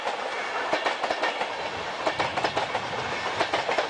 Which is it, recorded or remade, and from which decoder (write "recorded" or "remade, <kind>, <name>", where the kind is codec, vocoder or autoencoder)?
recorded